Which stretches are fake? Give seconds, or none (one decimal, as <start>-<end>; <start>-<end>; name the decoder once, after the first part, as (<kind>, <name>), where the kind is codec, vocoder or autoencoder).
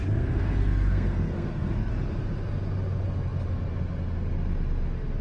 0.0-1.9 (codec, SNAC)